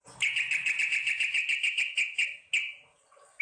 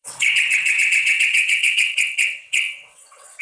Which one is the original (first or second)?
first